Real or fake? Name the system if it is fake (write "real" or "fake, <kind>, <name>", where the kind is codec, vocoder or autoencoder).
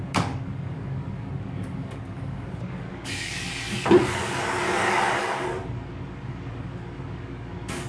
fake, codec, DAC